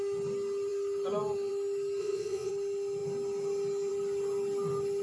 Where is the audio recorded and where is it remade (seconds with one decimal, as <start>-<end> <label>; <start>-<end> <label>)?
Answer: 0.0-2.0 recorded; 2.0-2.5 remade; 2.5-5.0 recorded